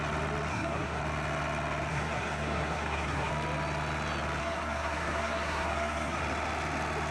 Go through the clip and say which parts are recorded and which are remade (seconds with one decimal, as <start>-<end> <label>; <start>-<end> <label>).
0.0-0.5 recorded; 0.5-1.0 remade; 1.0-1.9 recorded; 1.9-3.3 remade; 3.3-4.4 recorded; 4.4-6.2 remade; 6.2-7.1 recorded